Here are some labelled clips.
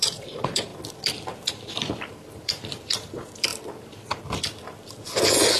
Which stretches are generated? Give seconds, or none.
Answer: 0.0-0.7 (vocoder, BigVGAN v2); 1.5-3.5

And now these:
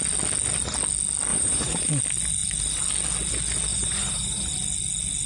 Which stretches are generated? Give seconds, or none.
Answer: 1.3-2.0 (vocoder, BigVGAN v2); 3.7-4.5

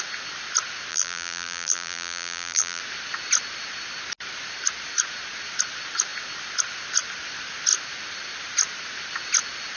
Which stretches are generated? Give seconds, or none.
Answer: 0.9-2.8 (vocoder, BigVGAN v2)

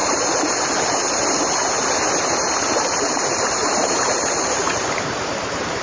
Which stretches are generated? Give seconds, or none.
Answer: 2.8-5.8 (vocoder, BigVGAN v2)

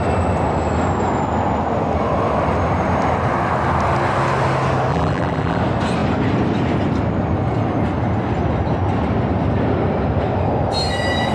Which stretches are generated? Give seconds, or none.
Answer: 4.9-5.6 (vocoder, BigVGAN v2)

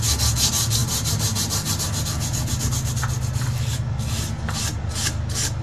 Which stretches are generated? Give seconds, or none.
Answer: 0.8-1.8 (vocoder, BigVGAN v2)